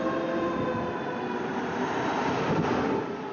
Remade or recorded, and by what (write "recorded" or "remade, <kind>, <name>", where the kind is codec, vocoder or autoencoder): recorded